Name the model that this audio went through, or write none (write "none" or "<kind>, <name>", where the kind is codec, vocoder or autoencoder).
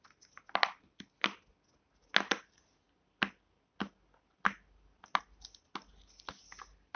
none